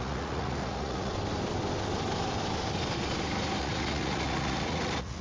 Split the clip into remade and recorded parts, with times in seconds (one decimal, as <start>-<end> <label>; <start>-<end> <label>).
0.0-1.1 remade; 1.1-3.6 recorded; 3.6-5.2 remade